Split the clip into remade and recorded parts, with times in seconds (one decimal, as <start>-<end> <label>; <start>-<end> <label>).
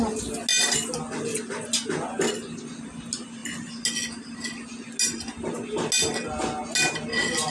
0.0-7.5 recorded